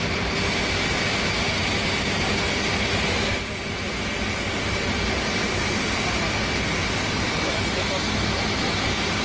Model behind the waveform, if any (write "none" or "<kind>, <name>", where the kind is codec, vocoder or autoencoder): none